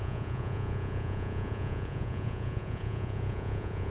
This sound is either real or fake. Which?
fake